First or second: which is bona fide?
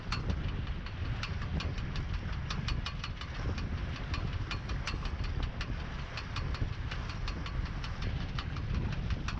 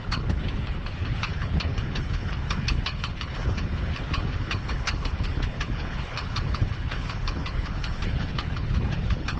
first